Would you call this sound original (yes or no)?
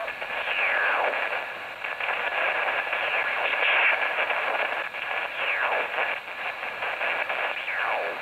yes